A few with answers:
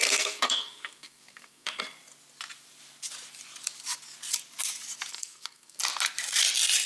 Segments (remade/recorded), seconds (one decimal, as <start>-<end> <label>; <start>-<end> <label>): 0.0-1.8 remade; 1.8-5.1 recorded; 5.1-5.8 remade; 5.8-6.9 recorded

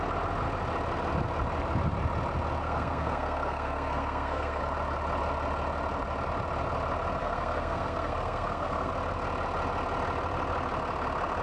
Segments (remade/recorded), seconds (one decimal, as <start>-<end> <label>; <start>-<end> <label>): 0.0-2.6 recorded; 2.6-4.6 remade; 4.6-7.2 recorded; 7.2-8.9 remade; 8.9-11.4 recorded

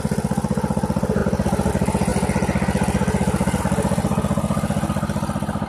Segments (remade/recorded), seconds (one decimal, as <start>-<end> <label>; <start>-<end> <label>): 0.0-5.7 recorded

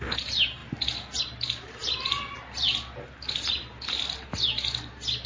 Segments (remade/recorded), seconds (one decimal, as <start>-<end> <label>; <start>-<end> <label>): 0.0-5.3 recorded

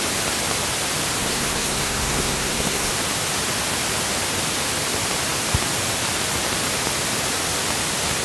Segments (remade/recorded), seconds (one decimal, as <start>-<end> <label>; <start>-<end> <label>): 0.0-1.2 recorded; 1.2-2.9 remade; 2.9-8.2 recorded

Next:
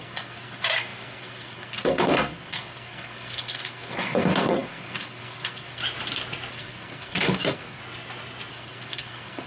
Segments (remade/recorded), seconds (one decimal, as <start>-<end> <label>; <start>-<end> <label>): 0.0-5.8 remade; 5.8-6.5 recorded; 6.5-7.8 remade; 7.8-8.5 recorded; 8.5-9.5 remade

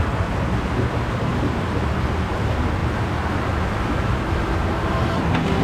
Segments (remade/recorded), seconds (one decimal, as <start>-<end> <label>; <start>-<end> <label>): 0.0-5.6 recorded

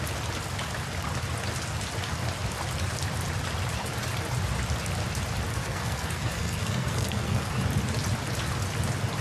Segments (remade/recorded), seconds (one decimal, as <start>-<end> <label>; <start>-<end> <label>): 0.0-5.5 recorded; 5.5-7.5 remade; 7.5-9.2 recorded